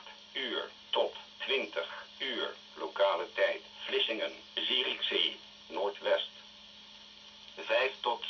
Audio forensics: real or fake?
real